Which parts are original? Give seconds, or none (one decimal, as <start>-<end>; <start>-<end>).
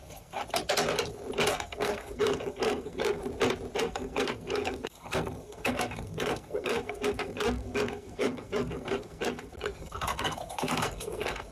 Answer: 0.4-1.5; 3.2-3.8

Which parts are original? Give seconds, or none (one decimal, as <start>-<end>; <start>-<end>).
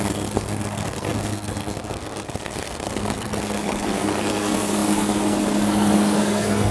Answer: none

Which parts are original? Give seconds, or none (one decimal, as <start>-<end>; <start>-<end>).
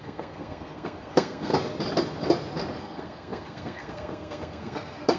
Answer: 1.5-2.8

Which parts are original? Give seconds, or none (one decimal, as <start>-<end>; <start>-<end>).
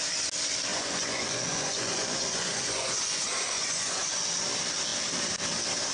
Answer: 0.0-0.7; 4.2-5.9